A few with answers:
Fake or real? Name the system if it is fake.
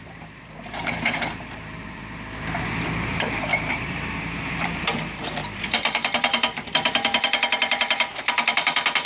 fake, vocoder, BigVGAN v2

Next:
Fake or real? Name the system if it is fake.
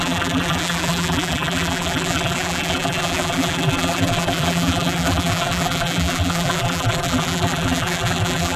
fake, vocoder, BigVGAN v2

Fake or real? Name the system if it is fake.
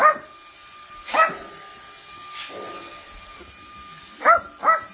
real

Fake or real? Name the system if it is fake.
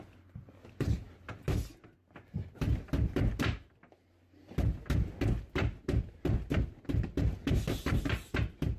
real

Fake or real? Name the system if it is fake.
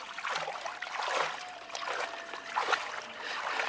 real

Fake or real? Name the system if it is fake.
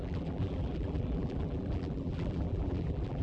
fake, vocoder, BigVGAN v2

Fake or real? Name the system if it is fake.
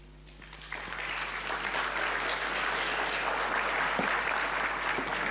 real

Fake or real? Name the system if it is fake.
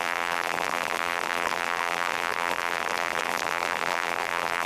fake, vocoder, BigVGAN v2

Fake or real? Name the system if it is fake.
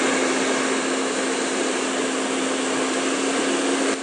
real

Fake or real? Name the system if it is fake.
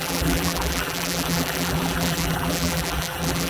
fake, vocoder, BigVGAN v2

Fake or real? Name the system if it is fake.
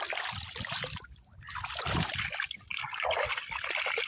real